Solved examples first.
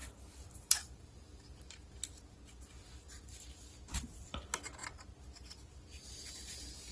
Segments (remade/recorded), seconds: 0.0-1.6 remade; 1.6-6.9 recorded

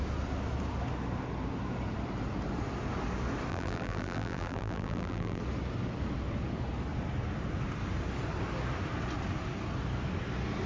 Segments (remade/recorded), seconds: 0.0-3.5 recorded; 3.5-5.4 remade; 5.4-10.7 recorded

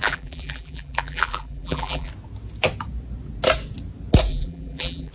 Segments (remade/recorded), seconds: 0.0-2.1 remade; 2.1-4.3 recorded; 4.3-5.1 remade

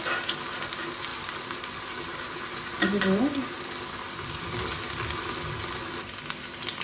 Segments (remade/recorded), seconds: 0.0-1.1 recorded; 1.1-4.9 remade; 4.9-6.8 recorded